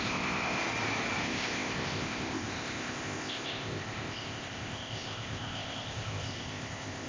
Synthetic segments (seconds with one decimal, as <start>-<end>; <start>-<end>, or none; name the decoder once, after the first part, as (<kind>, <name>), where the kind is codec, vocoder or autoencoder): 0.0-0.6 (codec, ZipCodec); 1.2-7.1